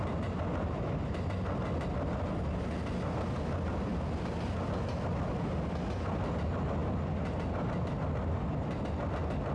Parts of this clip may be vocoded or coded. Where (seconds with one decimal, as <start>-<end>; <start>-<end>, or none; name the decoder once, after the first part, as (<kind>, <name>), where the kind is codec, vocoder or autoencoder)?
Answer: none